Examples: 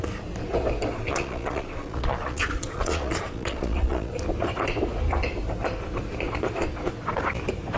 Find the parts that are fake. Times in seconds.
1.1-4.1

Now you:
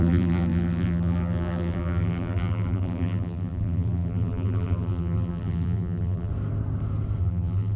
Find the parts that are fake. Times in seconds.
0.0-6.3; 7.2-7.8

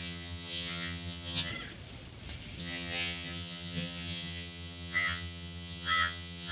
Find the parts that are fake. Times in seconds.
0.0-1.5; 2.6-6.5

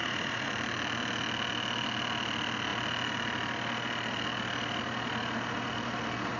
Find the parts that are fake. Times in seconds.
0.0-0.5

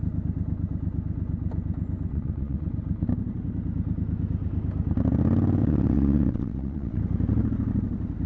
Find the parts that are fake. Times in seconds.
2.1-2.7; 5.6-7.0

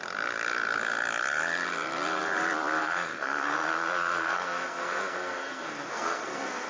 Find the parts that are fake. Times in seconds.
2.8-6.7

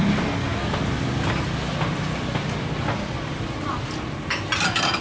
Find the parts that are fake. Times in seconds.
none

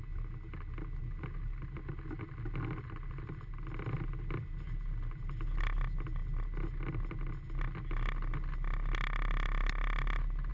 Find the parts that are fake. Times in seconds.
none